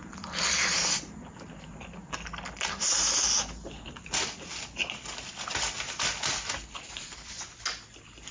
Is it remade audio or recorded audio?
recorded